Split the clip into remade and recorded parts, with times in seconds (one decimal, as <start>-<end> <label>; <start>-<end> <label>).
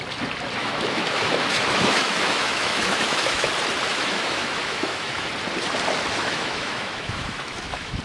0.0-0.6 recorded; 0.6-3.5 remade; 3.5-3.9 recorded; 3.9-5.3 remade; 5.3-6.2 recorded; 6.2-8.0 remade